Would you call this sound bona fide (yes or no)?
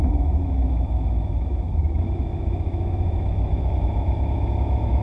no